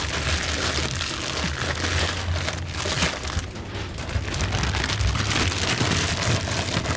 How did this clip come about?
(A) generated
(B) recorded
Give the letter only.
B